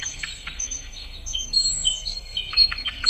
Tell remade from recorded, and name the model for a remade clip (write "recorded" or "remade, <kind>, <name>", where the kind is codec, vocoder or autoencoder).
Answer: remade, codec, SNAC